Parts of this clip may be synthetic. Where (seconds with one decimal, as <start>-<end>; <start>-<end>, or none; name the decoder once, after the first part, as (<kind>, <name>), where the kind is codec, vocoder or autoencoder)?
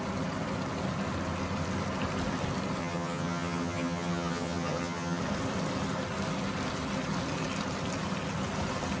2.8-5.2 (vocoder, HiFi-GAN)